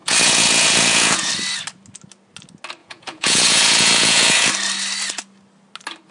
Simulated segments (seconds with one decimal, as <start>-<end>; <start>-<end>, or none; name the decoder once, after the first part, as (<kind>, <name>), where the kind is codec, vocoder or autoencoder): 0.0-1.3 (vocoder, Vocos); 2.8-4.5